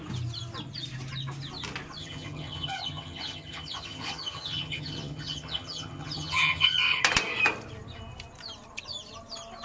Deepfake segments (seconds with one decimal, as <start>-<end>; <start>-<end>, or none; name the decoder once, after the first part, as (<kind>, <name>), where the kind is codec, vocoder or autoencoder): 2.0-7.0 (vocoder, HiFi-GAN)